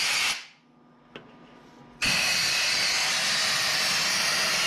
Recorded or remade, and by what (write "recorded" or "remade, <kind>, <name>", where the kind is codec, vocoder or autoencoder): recorded